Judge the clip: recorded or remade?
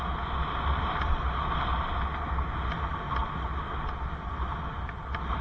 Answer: recorded